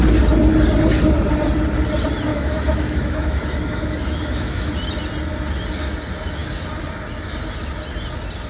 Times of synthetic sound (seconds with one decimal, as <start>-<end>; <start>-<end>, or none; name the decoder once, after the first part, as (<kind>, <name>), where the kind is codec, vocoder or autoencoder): 2.3-4.7 (autoencoder, DAC-VAE)